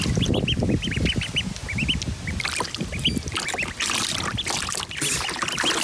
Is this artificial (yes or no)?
no